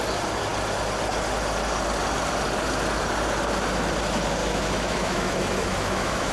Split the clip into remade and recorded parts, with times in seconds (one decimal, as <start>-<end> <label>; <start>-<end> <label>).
0.0-4.4 recorded; 4.4-6.3 remade